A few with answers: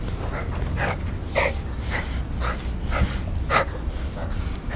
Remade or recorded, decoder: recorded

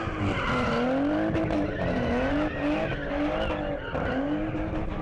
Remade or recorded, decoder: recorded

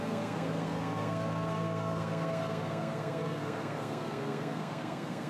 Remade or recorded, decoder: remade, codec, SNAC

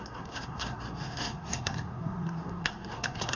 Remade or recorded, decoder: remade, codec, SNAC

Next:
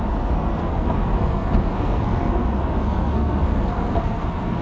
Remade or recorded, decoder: remade, codec, SNAC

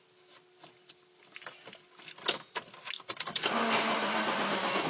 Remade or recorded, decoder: recorded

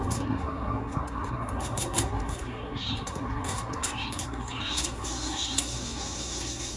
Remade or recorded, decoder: remade, codec, SNAC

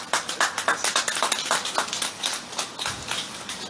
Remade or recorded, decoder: recorded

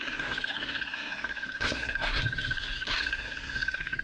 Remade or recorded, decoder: remade, codec, SNAC